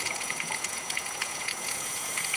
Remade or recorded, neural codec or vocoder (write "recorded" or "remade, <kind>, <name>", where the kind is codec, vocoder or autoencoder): remade, vocoder, Vocos